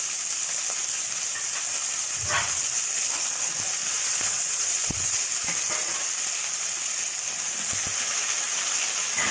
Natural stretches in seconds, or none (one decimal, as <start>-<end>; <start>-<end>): 0.0-3.8; 5.3-9.3